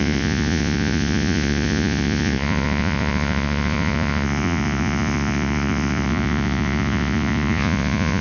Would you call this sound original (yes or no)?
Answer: no